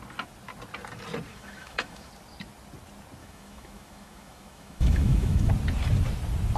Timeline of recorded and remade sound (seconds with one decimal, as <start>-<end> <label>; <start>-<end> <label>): 0.0-1.3 recorded; 1.3-2.1 remade; 2.1-3.2 recorded; 3.2-5.5 remade; 5.5-6.6 recorded